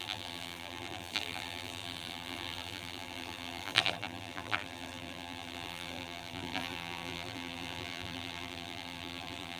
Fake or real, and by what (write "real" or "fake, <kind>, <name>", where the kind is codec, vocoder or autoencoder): fake, vocoder, BigVGAN v2